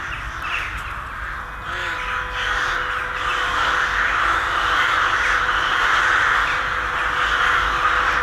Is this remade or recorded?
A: recorded